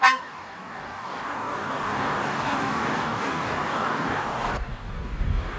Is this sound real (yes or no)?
no